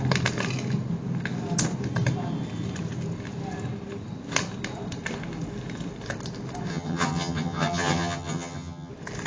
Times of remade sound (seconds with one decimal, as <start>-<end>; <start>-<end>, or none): 6.7-8.9